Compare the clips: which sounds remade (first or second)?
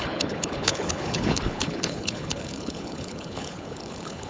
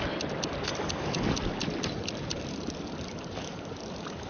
first